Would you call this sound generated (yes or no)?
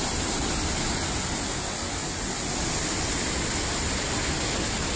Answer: no